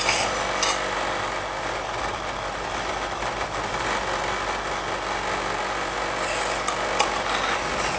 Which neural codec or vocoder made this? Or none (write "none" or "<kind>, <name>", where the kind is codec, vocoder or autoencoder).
none